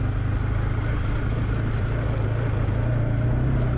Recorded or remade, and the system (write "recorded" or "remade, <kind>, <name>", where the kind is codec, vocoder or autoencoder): recorded